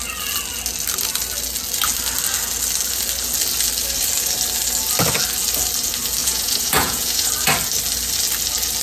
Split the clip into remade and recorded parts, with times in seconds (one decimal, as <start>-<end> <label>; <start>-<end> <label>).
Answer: 0.0-6.2 recorded; 6.2-7.3 remade; 7.3-8.8 recorded